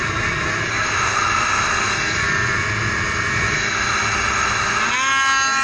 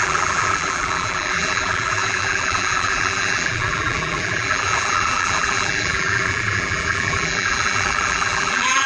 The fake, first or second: second